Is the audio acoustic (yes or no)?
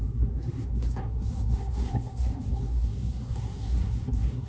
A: no